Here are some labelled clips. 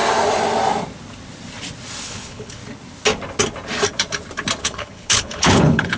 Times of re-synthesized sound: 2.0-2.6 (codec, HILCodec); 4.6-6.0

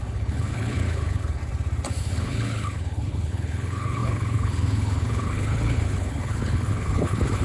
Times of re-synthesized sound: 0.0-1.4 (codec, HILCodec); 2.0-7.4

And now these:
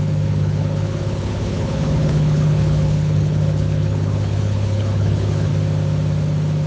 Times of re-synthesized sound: 0.0-5.5 (codec, HILCodec)

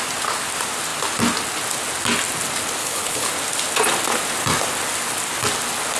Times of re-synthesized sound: 2.8-3.3 (codec, HILCodec)